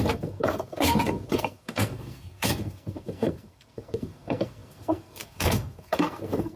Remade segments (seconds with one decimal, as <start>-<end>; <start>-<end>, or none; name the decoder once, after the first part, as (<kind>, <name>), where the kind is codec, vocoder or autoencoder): 0.0-6.6 (codec, SNAC)